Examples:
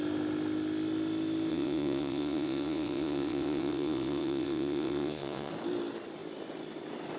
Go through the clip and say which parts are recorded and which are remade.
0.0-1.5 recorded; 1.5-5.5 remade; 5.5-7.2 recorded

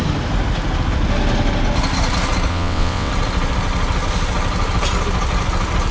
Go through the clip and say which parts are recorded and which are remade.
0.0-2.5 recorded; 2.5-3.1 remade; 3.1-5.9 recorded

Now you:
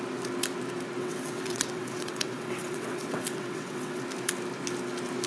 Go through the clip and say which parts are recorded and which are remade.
0.0-1.0 recorded; 1.0-4.0 remade; 4.0-5.3 recorded

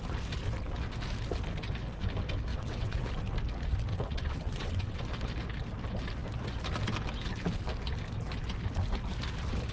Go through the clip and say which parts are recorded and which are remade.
0.0-2.5 recorded; 2.5-3.1 remade; 3.1-3.9 recorded; 3.9-5.0 remade; 5.0-9.7 recorded

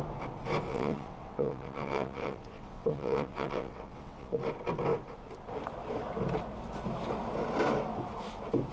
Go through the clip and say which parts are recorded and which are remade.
0.0-0.7 recorded; 0.7-4.4 remade; 4.4-8.7 recorded

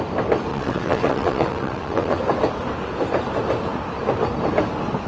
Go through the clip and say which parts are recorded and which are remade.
0.0-0.5 recorded; 0.5-2.2 remade; 2.2-5.1 recorded